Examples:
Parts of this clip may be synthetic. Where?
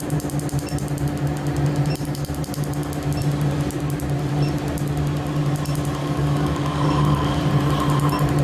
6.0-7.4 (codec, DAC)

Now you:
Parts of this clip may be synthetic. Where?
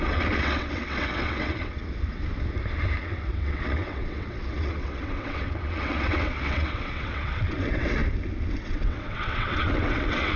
0.0-1.8 (vocoder, WaveNeXt); 3.0-8.0; 8.5-10.4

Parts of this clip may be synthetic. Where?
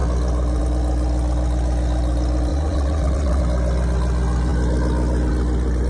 2.5-3.4 (vocoder, WaveNeXt)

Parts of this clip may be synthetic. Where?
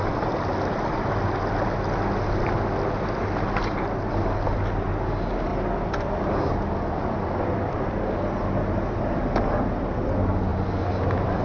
none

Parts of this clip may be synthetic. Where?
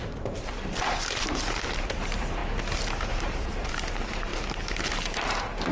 0.0-2.4 (vocoder, BigVGAN v2); 3.1-4.3; 4.9-5.7